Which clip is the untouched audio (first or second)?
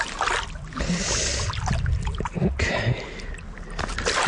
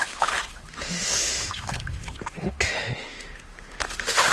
first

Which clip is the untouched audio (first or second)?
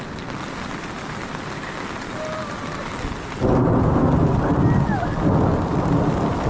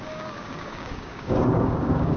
first